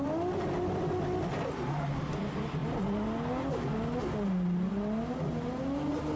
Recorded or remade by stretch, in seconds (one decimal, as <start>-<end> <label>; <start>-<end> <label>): 0.0-6.2 recorded